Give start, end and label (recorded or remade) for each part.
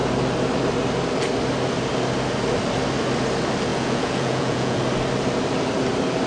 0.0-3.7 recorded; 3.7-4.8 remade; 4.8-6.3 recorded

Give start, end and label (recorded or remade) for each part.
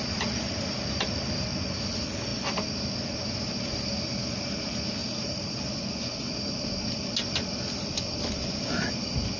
0.0-9.4 recorded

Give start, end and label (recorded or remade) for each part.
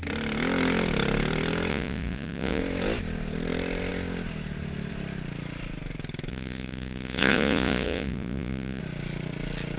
0.0-1.7 recorded; 1.7-2.6 remade; 2.6-6.3 recorded; 6.3-8.8 remade; 8.8-9.8 recorded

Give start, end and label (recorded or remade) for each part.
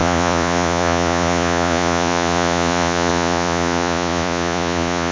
0.0-5.1 remade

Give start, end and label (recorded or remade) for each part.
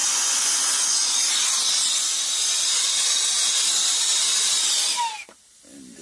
0.0-1.3 remade; 1.3-6.0 recorded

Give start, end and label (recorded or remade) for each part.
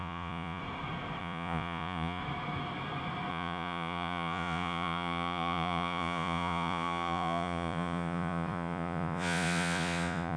0.0-0.6 remade; 0.6-1.2 recorded; 1.2-2.2 remade; 2.2-3.3 recorded; 3.3-10.4 remade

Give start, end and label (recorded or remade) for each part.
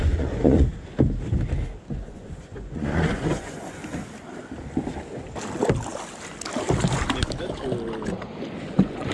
0.0-0.7 remade; 0.7-1.9 recorded; 1.9-3.8 remade; 3.8-8.6 recorded; 8.6-9.1 remade